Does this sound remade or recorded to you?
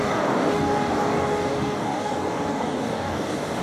remade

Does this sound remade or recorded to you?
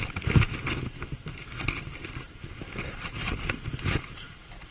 recorded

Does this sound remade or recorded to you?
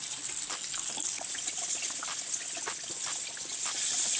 recorded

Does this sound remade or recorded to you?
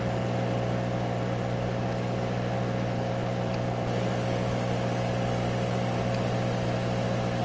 recorded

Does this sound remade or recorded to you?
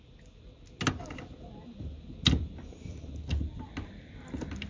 recorded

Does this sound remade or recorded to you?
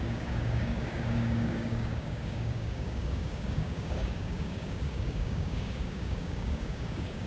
remade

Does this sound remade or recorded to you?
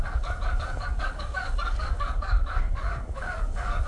remade